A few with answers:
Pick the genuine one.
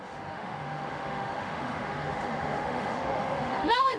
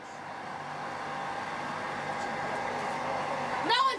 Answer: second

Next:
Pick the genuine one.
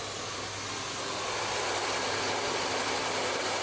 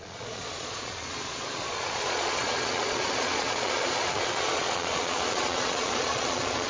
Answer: first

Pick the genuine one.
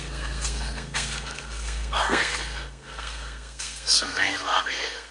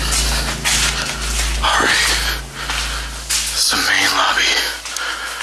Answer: second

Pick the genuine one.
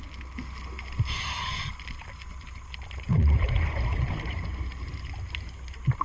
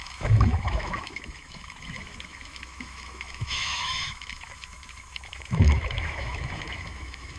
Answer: first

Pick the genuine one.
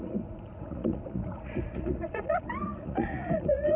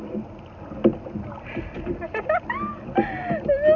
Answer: second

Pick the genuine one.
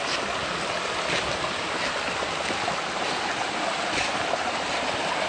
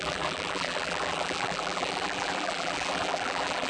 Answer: first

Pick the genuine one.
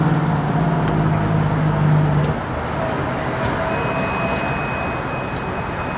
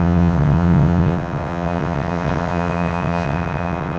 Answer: first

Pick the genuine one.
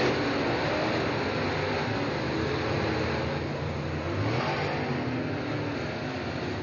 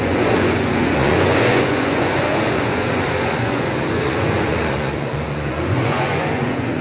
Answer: first